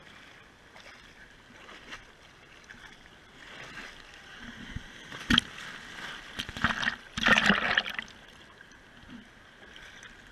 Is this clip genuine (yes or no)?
yes